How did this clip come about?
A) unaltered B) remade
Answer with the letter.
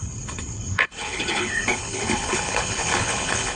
B